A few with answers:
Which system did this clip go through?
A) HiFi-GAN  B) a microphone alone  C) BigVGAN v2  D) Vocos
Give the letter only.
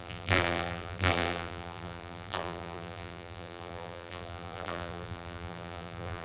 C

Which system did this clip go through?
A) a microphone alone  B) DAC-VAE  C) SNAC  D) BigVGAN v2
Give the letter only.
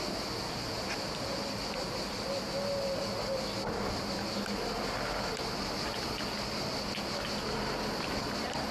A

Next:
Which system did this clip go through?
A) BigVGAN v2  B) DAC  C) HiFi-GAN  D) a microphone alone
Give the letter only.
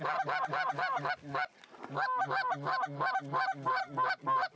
D